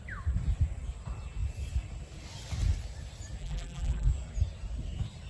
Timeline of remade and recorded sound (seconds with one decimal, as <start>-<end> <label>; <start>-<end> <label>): 0.0-3.4 recorded; 3.4-4.1 remade; 4.1-5.3 recorded